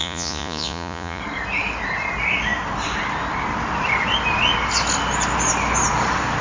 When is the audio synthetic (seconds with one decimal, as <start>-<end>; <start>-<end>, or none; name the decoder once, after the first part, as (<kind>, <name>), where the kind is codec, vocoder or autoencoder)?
0.0-1.2 (vocoder, Vocos)